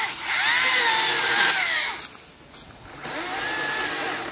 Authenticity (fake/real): real